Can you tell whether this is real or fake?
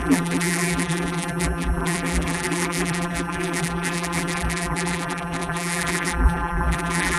fake